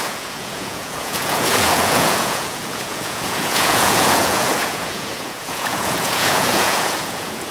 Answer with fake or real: fake